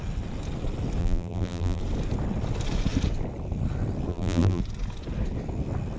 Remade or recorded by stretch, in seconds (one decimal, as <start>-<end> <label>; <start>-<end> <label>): 0.0-1.0 recorded; 1.0-1.8 remade; 1.8-4.1 recorded; 4.1-4.6 remade; 4.6-6.0 recorded